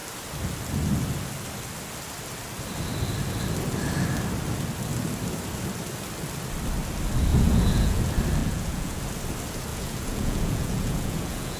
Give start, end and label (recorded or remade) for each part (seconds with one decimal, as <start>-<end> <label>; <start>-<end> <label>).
0.0-7.3 recorded; 7.3-8.0 remade; 8.0-8.4 recorded; 8.4-9.0 remade; 9.0-9.7 recorded; 9.7-11.6 remade